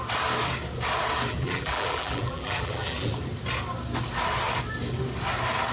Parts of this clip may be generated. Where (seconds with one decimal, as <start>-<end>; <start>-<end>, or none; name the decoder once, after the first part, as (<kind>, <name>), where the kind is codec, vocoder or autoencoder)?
1.3-3.1 (vocoder, BigVGAN v2)